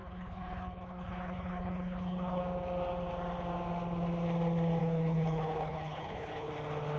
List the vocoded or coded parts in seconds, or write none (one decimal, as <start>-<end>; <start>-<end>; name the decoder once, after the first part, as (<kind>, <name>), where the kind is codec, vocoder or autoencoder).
0.0-2.4 (codec, HILCodec); 4.8-6.5